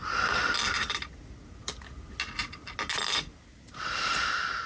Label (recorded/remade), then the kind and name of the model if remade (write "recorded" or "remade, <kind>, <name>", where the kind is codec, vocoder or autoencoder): recorded